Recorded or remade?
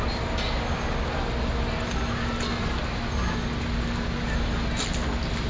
recorded